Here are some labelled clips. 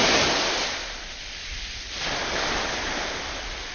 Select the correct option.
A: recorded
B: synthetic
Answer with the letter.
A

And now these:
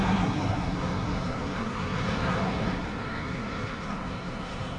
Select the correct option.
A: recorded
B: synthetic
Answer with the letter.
B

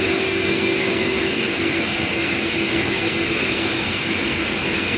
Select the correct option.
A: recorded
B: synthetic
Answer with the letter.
B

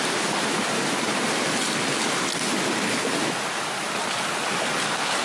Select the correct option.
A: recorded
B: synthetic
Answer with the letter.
A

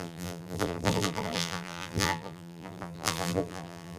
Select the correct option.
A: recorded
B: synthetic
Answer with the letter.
B